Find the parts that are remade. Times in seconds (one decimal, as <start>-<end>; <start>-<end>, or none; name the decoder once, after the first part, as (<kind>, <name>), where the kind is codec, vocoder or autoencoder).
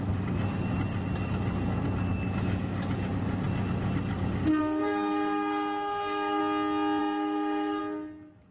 4.6-6.4 (codec, SNAC); 7.0-7.8